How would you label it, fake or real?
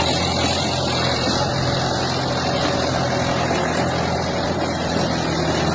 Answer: real